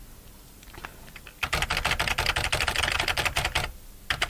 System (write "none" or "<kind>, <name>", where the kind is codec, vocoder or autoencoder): none